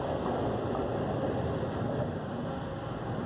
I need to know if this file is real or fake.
real